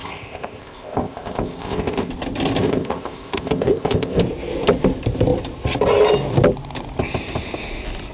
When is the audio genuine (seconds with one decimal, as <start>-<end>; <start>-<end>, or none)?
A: 2.1-2.6; 4.2-8.1